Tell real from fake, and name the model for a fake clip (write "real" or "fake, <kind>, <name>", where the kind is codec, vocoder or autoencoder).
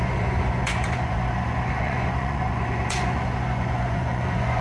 fake, vocoder, Vocos